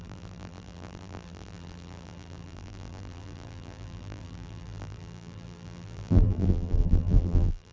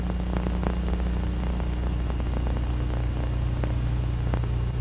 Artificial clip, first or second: first